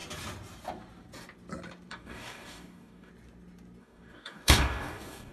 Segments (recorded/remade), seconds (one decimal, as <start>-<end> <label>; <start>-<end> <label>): 0.0-1.9 recorded; 1.9-3.1 remade; 3.1-3.8 recorded; 3.8-5.3 remade